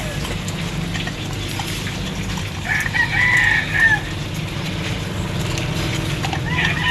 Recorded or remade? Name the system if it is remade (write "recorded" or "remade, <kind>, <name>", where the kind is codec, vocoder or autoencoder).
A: recorded